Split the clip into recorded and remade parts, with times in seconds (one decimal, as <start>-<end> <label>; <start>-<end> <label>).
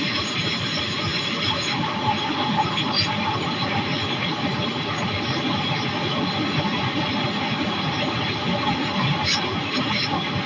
0.0-10.5 recorded